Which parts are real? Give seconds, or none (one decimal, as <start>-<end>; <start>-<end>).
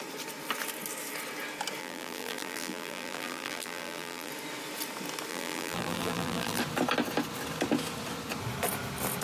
0.0-1.8; 4.3-5.3; 6.6-9.2